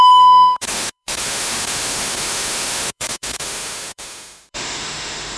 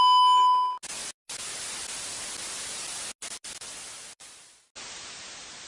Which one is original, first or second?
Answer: second